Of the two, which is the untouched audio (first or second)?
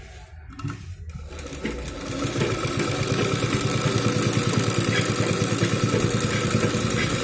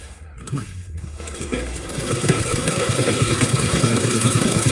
first